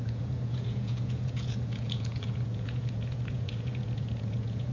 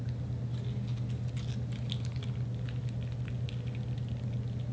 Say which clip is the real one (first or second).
second